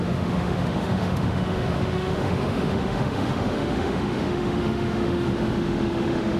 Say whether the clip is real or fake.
fake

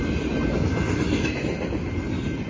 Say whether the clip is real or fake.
real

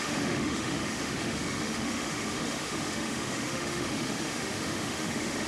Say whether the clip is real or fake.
fake